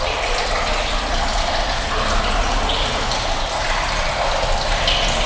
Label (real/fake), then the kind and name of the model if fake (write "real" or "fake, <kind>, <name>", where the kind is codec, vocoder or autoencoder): real